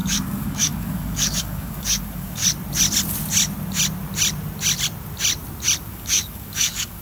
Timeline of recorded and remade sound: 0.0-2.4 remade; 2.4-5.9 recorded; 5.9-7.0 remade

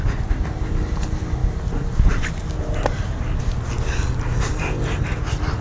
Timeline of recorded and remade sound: 0.0-5.6 recorded

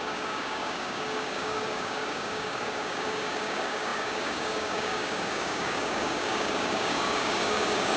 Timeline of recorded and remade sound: 0.0-8.0 remade

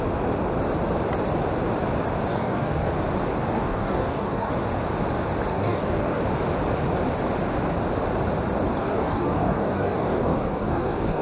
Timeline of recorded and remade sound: 0.0-2.3 recorded; 2.3-2.9 remade; 2.9-3.5 recorded; 3.5-4.5 remade; 4.5-5.5 recorded; 5.5-6.2 remade; 6.2-8.8 recorded; 8.8-11.2 remade

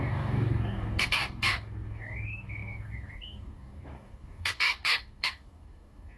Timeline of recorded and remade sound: 0.0-6.2 remade

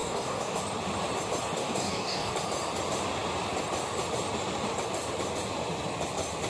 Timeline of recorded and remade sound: 0.0-0.6 remade; 0.6-1.6 recorded; 1.6-2.3 remade; 2.3-6.5 recorded